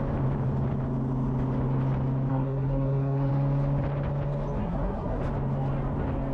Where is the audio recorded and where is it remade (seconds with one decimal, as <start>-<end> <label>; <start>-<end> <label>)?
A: 0.0-2.3 recorded; 2.3-3.3 remade; 3.3-4.6 recorded; 4.6-5.2 remade; 5.2-6.3 recorded